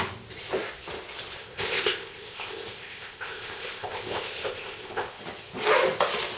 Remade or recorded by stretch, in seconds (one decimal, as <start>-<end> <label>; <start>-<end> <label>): 0.0-1.4 recorded; 1.4-5.2 remade; 5.2-6.4 recorded